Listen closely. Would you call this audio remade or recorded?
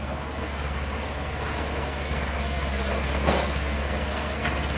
remade